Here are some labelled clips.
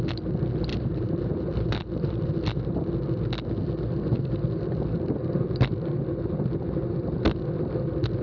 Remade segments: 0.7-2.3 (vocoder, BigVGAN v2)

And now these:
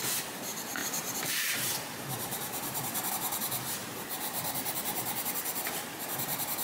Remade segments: 0.8-3.1 (vocoder, BigVGAN v2); 3.8-5.7

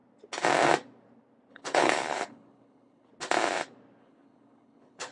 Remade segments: 1.5-3.1 (codec, HILCodec); 4.0-5.1

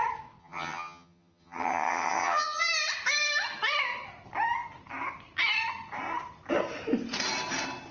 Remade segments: 0.4-2.6 (vocoder, HiFi-GAN)

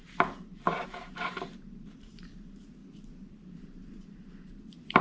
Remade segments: 0.0-2.8 (vocoder, BigVGAN v2); 3.3-5.0

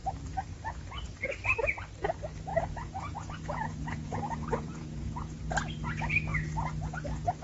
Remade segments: 2.5-5.4 (vocoder, Vocos)